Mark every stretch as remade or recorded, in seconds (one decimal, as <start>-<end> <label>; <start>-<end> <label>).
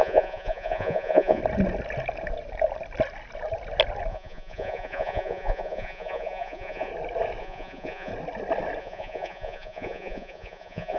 0.0-1.4 remade; 1.4-4.1 recorded; 4.1-6.9 remade; 6.9-7.4 recorded; 7.4-8.1 remade; 8.1-8.8 recorded; 8.8-11.0 remade